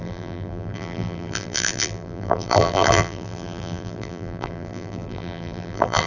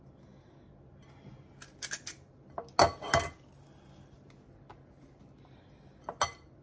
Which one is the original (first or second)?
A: second